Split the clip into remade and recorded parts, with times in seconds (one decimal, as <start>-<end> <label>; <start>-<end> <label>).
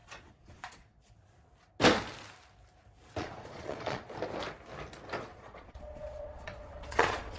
0.0-1.1 remade; 1.1-3.2 recorded; 3.2-4.1 remade; 4.1-5.3 recorded; 5.3-7.4 remade